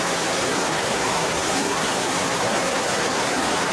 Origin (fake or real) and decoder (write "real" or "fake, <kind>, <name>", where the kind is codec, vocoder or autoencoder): fake, codec, SNAC